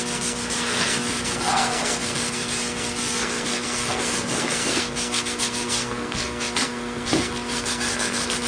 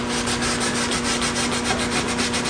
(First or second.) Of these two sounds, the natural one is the second